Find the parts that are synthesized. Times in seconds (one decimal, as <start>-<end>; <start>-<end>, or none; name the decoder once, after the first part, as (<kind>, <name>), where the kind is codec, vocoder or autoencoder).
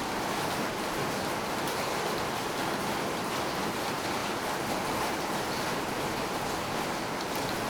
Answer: none